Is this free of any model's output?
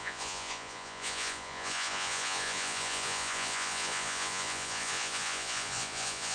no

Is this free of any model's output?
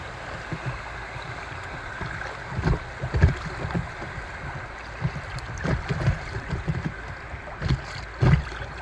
yes